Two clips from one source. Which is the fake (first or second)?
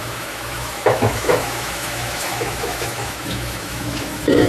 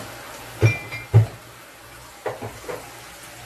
first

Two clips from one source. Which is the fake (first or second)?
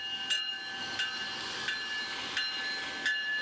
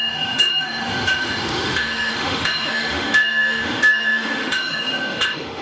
second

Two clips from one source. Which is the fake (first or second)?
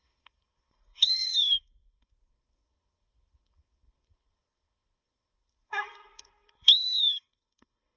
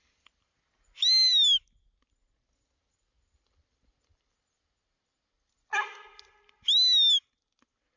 first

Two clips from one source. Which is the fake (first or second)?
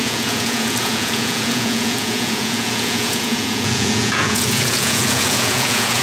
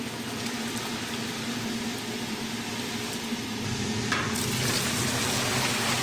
first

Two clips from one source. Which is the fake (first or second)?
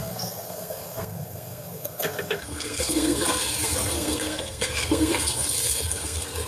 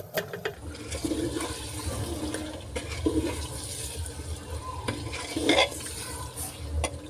first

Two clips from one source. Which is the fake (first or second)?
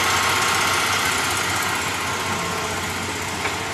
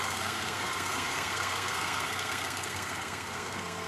second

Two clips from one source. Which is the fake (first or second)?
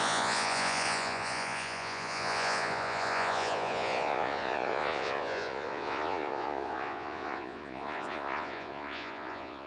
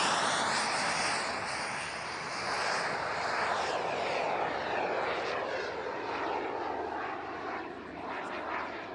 first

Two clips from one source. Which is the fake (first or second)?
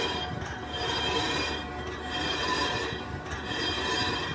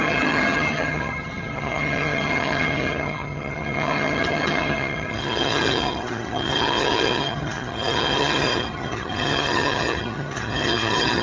second